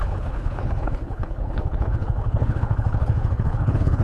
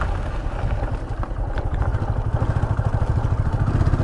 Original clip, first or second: second